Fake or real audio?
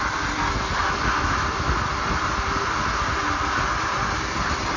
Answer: real